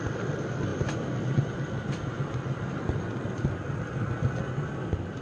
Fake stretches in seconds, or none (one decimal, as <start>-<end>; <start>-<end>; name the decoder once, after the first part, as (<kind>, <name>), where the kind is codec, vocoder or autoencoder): none